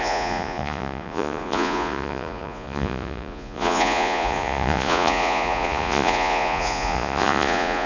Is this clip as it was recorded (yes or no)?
no